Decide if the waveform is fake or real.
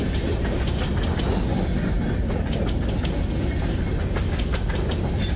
real